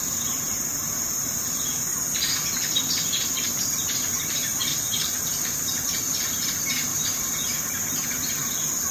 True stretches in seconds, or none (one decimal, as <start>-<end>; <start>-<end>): 1.9-2.9; 6.9-7.9

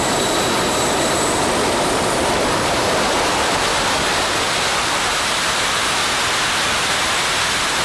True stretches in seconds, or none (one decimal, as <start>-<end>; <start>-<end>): 6.0-6.9

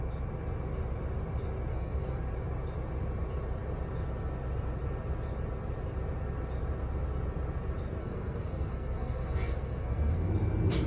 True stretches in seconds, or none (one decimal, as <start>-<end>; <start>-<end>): 0.0-1.7; 2.2-8.0; 10.3-10.9

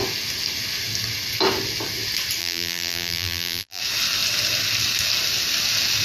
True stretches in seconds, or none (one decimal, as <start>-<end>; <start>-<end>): 0.0-2.4; 3.8-6.0